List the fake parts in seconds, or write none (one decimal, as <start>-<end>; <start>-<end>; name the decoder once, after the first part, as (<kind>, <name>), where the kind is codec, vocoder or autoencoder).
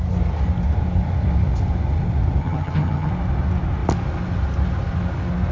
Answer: 2.4-3.1 (vocoder, HiFi-GAN)